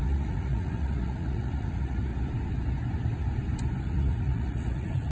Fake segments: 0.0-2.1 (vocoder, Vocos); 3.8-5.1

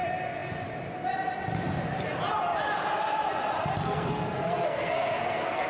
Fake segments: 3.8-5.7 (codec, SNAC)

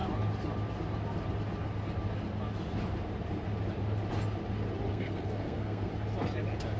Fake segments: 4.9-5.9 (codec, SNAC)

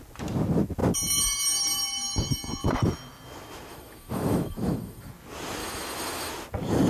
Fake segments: 3.7-5.1 (autoencoder, DAC-VAE); 5.6-6.3

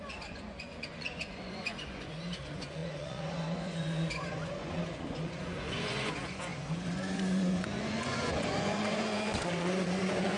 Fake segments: 0.0-10.4 (vocoder, Vocos)

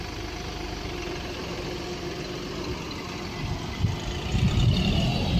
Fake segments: none

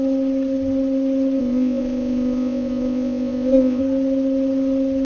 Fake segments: 1.4-3.8 (codec, ZipCodec)

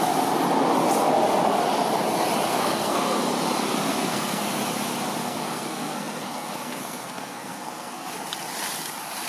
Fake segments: 2.5-3.2 (codec, SNAC); 3.9-4.4; 5.2-8.1